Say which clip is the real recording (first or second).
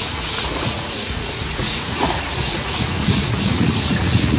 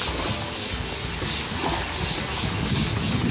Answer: second